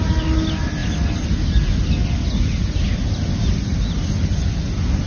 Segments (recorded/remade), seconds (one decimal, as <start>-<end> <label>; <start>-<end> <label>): 0.0-5.1 recorded